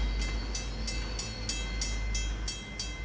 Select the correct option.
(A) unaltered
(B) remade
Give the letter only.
A